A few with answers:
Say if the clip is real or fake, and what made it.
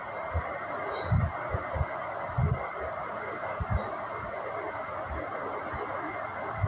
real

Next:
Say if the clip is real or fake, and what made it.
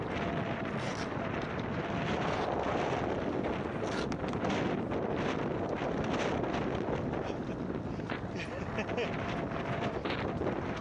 real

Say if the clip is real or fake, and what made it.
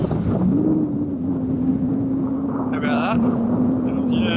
real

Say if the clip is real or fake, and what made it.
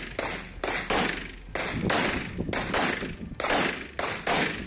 real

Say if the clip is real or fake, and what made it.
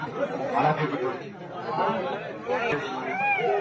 real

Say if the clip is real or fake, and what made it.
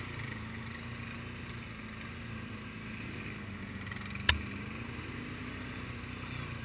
real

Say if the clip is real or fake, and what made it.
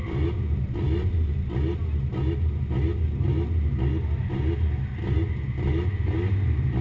real